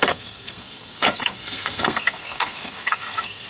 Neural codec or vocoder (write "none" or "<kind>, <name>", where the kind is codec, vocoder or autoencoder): codec, SNAC